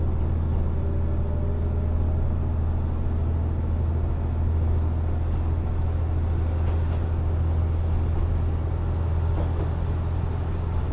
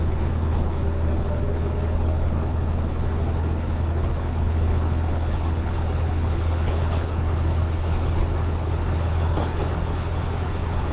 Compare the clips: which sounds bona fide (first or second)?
first